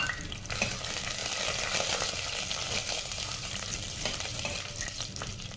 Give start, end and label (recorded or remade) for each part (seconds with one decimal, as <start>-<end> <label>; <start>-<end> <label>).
0.0-3.4 recorded; 3.4-5.6 remade